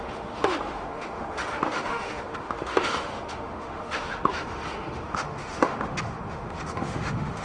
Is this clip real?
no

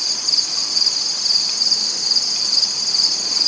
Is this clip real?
yes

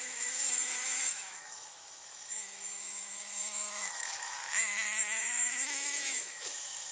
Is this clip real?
no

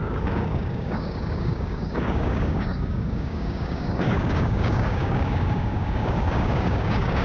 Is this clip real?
no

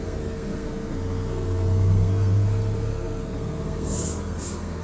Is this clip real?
no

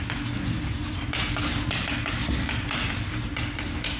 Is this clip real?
yes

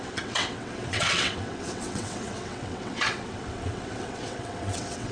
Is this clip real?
no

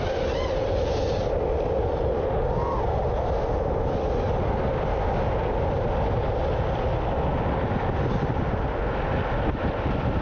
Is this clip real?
yes